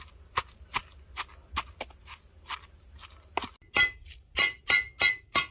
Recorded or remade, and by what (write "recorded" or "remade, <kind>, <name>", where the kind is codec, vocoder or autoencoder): recorded